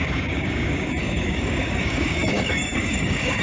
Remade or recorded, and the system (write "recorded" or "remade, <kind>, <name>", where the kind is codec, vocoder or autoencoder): remade, codec, DAC